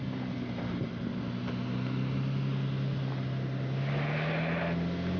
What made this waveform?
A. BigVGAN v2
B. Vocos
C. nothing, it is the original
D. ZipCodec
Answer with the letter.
C